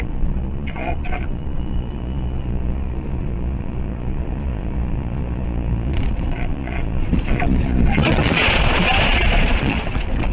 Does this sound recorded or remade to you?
remade